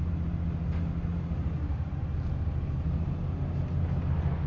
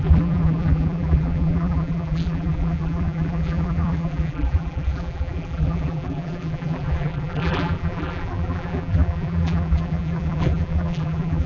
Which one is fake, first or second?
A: second